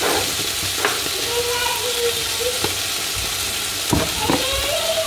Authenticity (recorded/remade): recorded